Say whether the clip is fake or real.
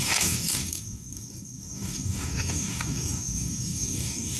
fake